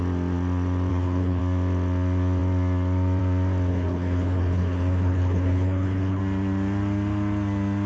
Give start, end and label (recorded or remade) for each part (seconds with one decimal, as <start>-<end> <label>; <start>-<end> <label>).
0.0-0.9 recorded; 0.9-1.4 remade; 1.4-3.7 recorded; 3.7-6.2 remade; 6.2-7.9 recorded